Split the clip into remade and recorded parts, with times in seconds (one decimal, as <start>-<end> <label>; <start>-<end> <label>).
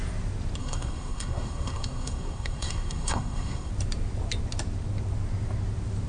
0.0-0.6 recorded; 0.6-3.7 remade; 3.7-6.1 recorded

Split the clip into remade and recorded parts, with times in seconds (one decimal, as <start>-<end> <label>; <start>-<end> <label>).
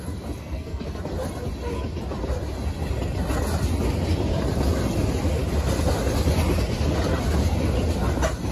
0.0-0.4 recorded; 0.4-1.0 remade; 1.0-8.5 recorded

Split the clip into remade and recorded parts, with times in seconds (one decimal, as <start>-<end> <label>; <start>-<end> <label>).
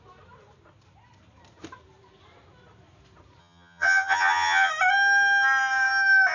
0.0-3.4 recorded; 3.4-4.7 remade; 4.7-6.3 recorded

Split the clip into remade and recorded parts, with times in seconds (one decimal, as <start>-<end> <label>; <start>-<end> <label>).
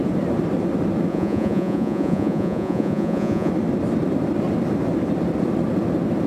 0.0-1.1 recorded; 1.1-3.5 remade; 3.5-6.3 recorded